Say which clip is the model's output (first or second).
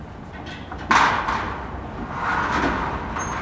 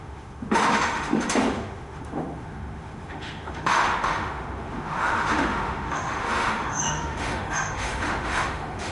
second